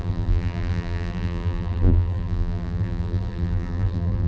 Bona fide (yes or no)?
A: no